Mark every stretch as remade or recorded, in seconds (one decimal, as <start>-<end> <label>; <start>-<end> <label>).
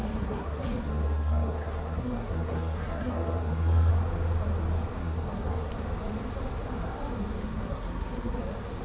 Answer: 0.0-3.9 remade; 3.9-5.0 recorded; 5.0-5.7 remade; 5.7-7.4 recorded; 7.4-8.4 remade; 8.4-8.8 recorded